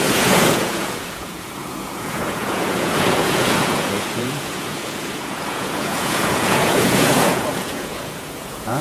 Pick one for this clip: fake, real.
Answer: fake